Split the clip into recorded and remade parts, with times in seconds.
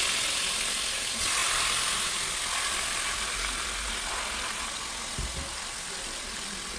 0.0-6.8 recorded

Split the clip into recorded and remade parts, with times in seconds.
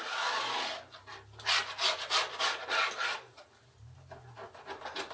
0.0-5.1 recorded